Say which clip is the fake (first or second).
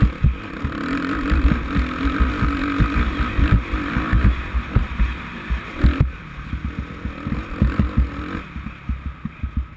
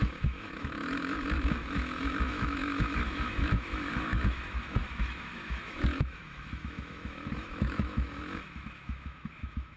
second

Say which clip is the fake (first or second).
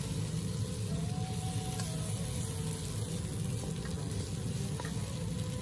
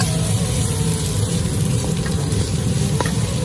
second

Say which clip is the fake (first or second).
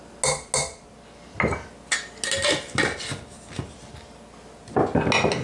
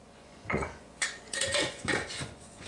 second